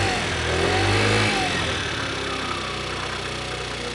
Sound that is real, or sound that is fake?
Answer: real